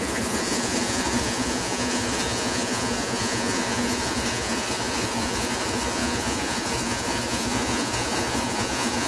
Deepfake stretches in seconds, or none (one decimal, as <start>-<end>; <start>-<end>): 0.0-9.1